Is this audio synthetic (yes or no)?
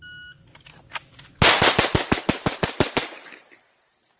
no